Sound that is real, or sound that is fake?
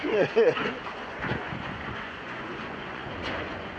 fake